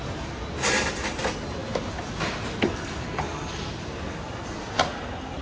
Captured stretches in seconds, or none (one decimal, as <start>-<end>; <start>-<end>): 0.0-5.4